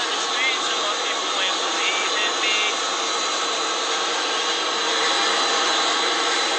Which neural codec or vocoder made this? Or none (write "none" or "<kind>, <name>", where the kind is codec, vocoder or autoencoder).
none